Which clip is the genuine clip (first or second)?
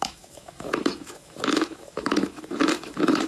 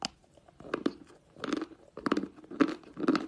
second